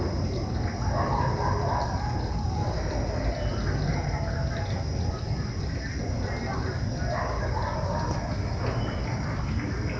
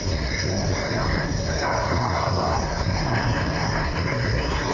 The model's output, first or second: second